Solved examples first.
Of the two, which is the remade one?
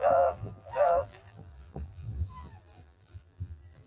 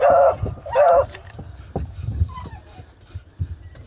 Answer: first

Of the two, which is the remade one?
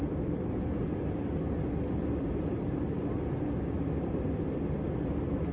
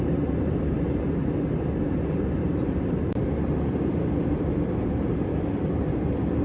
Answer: second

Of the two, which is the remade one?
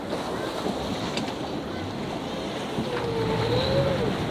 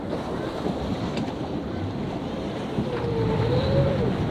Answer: second